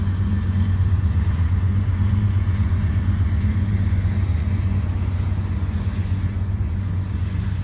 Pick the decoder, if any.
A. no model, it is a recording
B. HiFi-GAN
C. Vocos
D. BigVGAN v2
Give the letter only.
C